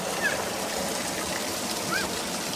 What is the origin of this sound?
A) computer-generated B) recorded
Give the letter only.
B